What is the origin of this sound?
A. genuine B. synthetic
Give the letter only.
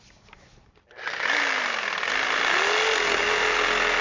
A